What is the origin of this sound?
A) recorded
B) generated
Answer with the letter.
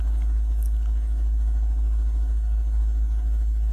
A